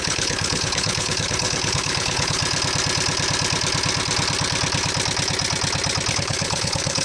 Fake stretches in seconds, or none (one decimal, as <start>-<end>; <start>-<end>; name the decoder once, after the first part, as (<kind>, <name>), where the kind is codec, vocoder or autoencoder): 0.0-2.4 (codec, HILCodec); 6.1-7.0